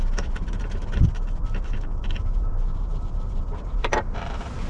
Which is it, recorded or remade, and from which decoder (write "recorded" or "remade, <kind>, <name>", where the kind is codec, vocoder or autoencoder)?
remade, vocoder, BigVGAN v2